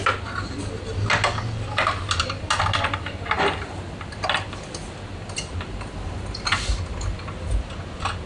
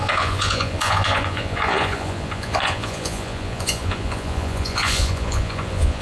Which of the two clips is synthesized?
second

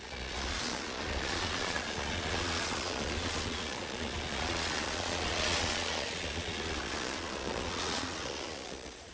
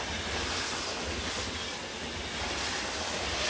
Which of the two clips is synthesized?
first